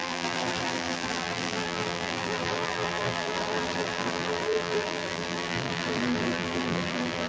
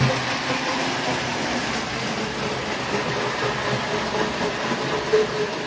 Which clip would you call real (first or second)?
second